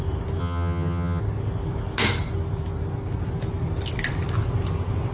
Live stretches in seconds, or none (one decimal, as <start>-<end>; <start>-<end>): 0.0-0.4; 1.2-5.1

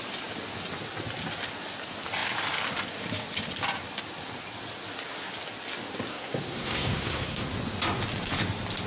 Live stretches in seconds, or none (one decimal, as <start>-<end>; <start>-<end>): 0.0-6.1; 7.5-8.9

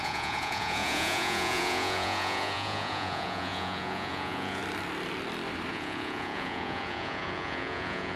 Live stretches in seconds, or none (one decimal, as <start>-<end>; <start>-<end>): 4.6-5.7

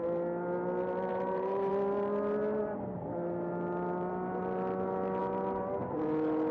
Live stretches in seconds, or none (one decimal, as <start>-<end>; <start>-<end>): 0.0-1.1; 1.7-6.5

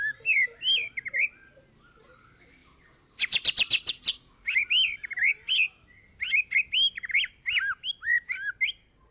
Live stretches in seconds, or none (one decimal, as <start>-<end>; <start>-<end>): 0.0-9.1

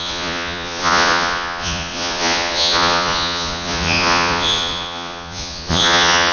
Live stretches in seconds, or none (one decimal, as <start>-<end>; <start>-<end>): none